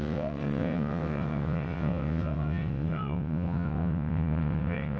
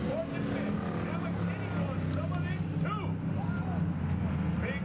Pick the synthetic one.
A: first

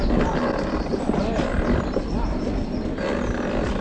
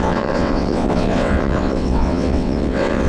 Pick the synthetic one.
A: second